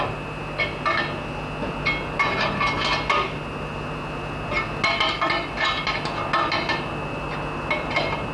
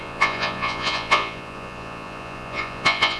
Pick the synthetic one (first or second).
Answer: second